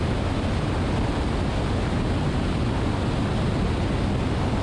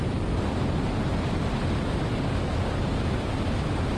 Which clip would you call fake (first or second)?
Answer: second